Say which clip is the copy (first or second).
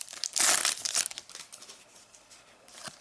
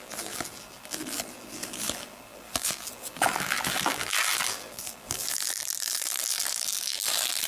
second